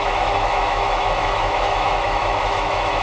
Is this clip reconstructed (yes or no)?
yes